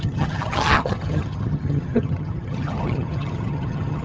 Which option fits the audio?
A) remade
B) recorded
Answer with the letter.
A